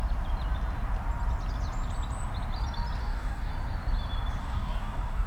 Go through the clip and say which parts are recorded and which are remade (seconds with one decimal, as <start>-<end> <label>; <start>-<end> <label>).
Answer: 0.0-3.0 recorded; 3.0-3.5 remade; 3.5-4.4 recorded; 4.4-5.3 remade

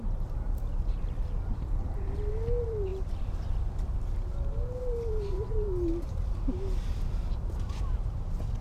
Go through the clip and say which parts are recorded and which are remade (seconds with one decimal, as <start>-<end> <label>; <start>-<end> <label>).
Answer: 0.0-8.6 recorded

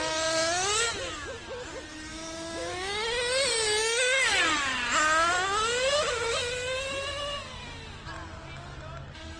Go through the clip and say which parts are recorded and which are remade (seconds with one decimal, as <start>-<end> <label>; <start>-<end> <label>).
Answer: 0.0-2.1 recorded; 2.1-2.9 remade; 2.9-9.4 recorded

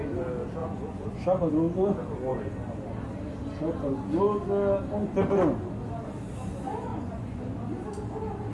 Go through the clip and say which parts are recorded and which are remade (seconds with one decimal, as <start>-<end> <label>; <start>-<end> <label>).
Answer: 0.0-0.6 recorded; 0.6-1.5 remade; 1.5-6.9 recorded; 6.9-7.4 remade; 7.4-8.5 recorded

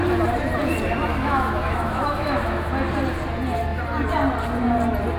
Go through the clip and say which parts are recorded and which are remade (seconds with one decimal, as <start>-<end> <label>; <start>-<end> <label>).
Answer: 0.0-1.1 recorded; 1.1-2.7 remade; 2.7-5.2 recorded

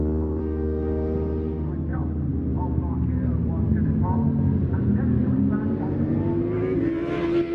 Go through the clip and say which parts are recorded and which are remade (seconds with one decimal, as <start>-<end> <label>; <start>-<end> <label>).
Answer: 0.0-0.4 recorded; 0.4-1.7 remade; 1.7-7.5 recorded